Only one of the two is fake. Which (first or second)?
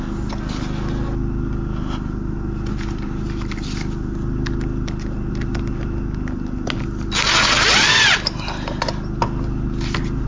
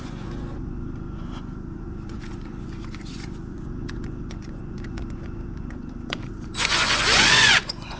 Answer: second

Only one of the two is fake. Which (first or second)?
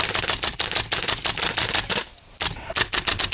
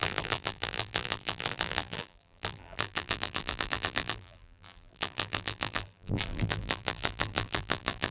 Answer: second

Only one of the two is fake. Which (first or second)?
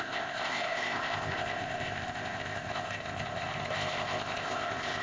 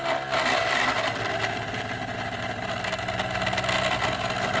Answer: first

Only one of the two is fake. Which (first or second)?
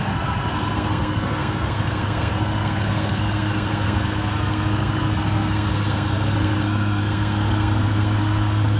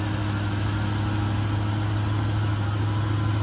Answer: first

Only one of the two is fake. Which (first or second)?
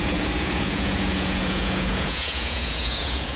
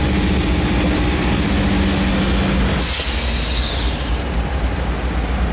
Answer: first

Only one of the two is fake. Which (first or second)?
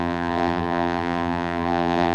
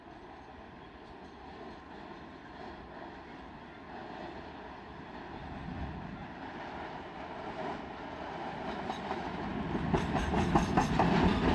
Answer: first